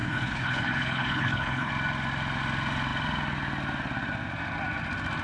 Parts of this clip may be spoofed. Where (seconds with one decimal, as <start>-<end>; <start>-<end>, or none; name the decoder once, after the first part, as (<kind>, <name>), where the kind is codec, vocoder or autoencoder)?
0.0-1.7 (codec, HILCodec)